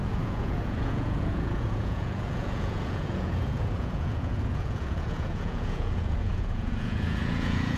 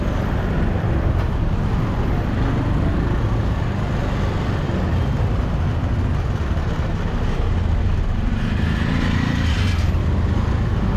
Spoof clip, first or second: first